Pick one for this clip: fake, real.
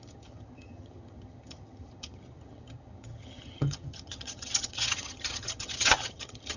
fake